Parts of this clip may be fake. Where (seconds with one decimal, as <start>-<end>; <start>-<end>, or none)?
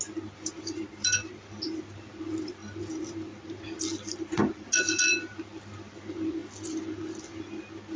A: none